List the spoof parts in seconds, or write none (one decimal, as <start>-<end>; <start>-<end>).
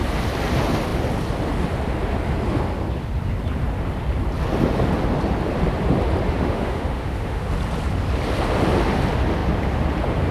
6.4-7.5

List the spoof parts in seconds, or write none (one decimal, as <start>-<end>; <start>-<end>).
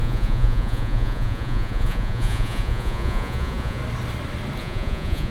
0.0-3.8; 4.6-5.3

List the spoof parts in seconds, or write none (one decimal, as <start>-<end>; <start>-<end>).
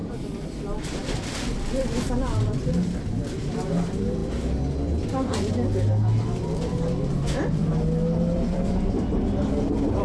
0.0-0.6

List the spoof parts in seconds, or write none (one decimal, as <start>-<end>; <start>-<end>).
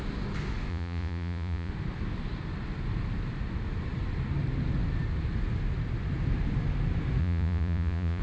0.7-1.7; 7.2-8.2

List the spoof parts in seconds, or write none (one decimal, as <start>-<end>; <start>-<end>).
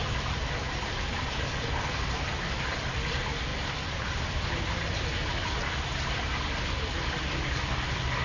none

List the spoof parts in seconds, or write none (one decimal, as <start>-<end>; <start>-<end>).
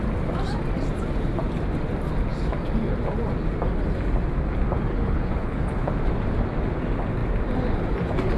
4.9-5.9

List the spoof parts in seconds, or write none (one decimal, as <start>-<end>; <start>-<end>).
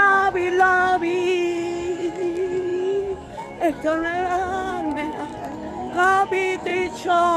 0.0-5.3; 5.8-7.4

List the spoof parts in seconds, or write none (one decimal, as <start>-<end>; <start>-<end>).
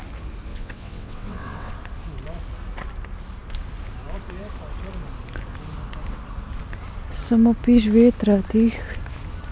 0.5-1.7